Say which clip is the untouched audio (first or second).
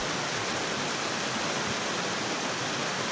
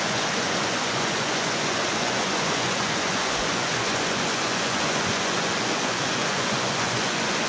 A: first